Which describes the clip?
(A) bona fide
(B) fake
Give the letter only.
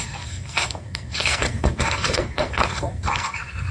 B